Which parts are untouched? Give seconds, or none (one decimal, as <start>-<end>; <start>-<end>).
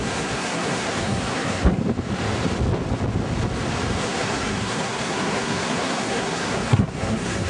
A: 1.8-4.0